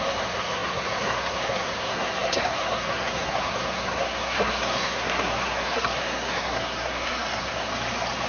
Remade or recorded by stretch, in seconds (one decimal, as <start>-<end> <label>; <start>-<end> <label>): 0.0-7.7 remade; 7.7-8.3 recorded